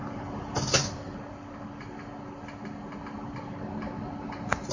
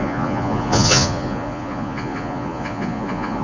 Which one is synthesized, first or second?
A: second